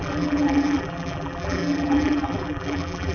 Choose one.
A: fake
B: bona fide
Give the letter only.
A